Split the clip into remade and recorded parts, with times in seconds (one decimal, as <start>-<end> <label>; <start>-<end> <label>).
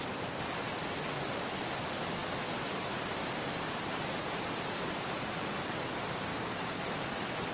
0.0-6.3 recorded; 6.3-6.8 remade; 6.8-7.5 recorded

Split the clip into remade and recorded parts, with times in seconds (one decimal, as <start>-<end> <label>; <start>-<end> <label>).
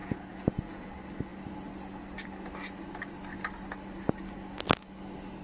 0.0-0.9 remade; 0.9-5.4 recorded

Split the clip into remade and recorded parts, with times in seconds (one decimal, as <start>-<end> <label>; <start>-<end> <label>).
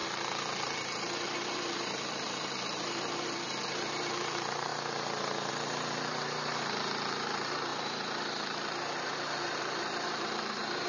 0.0-4.7 remade; 4.7-5.5 recorded; 5.5-10.9 remade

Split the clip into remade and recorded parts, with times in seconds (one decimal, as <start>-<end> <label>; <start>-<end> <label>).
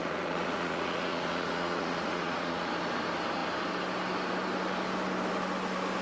0.0-2.7 remade; 2.7-6.0 recorded